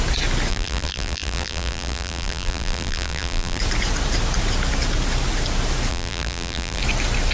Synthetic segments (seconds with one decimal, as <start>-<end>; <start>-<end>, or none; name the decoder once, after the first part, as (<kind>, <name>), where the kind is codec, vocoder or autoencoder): 0.5-3.6 (vocoder, BigVGAN v2); 5.9-6.8